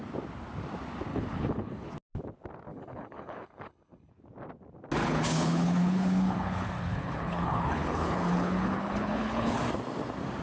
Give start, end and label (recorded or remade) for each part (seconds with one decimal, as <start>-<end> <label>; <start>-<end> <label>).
0.0-1.1 recorded; 1.1-1.9 remade; 1.9-2.7 recorded; 2.7-4.1 remade; 4.1-5.0 recorded; 5.0-9.6 remade; 9.6-10.4 recorded